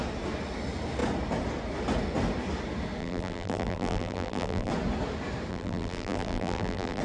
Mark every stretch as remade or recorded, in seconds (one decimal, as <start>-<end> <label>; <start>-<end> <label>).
0.0-3.0 recorded; 3.0-4.7 remade; 4.7-5.5 recorded; 5.5-7.0 remade